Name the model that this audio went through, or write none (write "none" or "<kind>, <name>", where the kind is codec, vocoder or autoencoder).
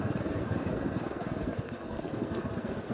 codec, SNAC